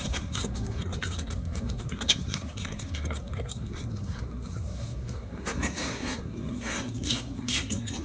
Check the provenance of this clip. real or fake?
fake